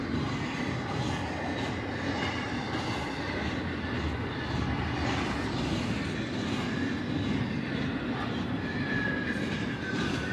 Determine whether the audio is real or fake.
real